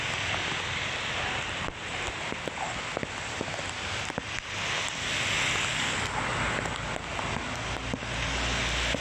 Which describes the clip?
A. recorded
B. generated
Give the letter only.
A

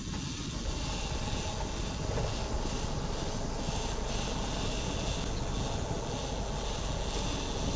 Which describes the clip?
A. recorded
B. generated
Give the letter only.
A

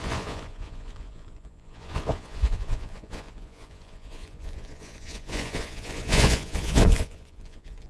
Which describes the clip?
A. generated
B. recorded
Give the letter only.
A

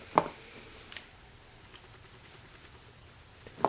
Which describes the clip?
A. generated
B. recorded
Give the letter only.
B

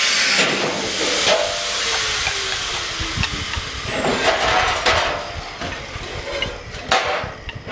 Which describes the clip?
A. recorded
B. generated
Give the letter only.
A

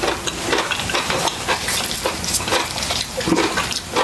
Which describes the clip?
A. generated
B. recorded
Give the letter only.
B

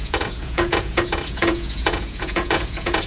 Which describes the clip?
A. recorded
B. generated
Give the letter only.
B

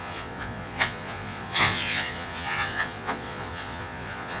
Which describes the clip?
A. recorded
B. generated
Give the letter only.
B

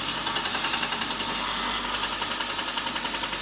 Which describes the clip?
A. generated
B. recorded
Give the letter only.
B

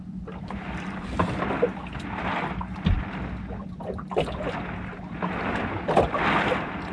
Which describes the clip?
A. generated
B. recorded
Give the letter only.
B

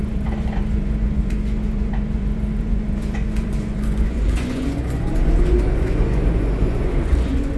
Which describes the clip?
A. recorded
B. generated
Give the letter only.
B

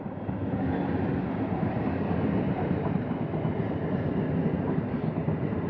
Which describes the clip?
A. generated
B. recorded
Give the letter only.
B